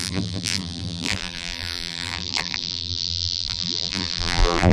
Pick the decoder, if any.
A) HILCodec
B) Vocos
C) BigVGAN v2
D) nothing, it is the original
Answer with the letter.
C